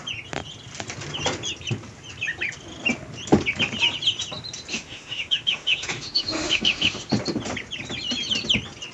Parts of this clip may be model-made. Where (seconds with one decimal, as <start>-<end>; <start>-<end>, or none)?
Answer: 4.7-7.1